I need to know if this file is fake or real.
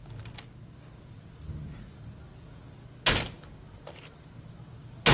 real